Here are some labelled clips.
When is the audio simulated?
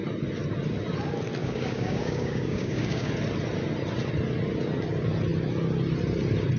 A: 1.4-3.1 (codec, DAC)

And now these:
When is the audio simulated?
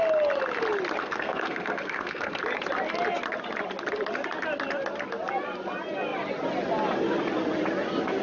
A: 1.0-2.4 (codec, SNAC)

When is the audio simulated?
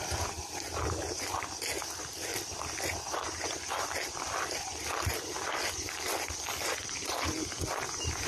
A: 2.3-7.0 (vocoder, BigVGAN v2)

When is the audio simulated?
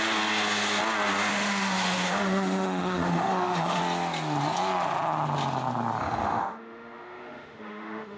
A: 1.3-3.8 (autoencoder, DAC-VAE); 6.0-8.2